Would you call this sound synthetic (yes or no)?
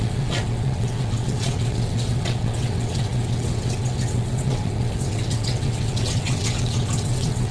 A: yes